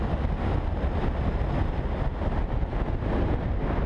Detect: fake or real real